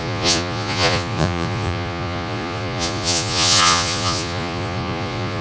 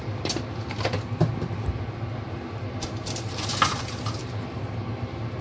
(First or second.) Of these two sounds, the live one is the second